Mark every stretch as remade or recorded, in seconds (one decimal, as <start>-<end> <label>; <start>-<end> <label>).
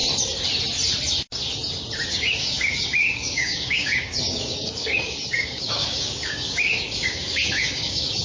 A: 0.0-2.1 recorded; 2.1-8.2 remade